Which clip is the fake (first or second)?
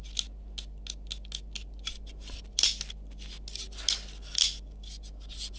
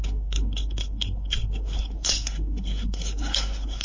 second